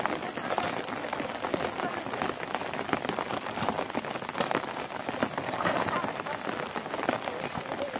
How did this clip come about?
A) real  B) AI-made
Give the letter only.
A